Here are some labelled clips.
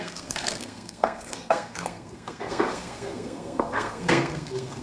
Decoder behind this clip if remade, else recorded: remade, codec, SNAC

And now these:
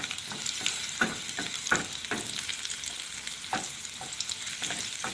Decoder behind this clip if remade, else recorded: recorded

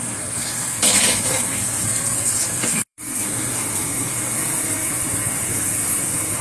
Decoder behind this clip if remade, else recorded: remade, codec, SNAC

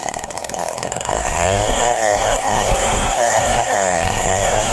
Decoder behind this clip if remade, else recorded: remade, codec, SNAC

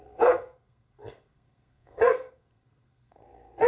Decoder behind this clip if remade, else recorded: remade, codec, SNAC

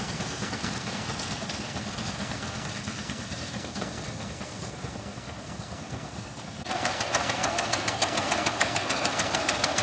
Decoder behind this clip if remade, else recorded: remade, codec, SNAC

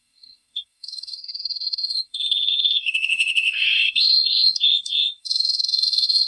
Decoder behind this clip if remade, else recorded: remade, codec, SNAC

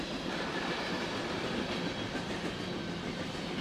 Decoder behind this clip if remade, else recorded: recorded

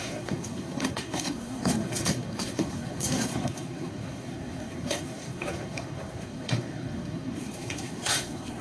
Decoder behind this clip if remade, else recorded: remade, codec, SNAC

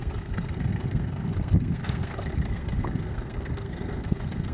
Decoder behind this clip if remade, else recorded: remade, codec, SNAC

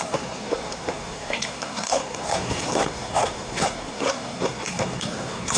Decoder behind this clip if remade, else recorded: remade, codec, SNAC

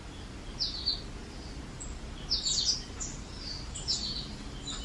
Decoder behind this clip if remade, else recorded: recorded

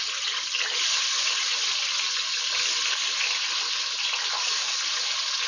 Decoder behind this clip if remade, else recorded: recorded